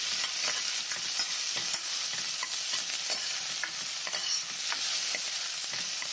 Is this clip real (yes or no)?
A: yes